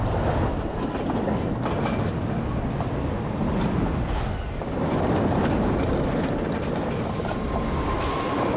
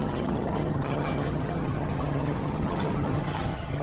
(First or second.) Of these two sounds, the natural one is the first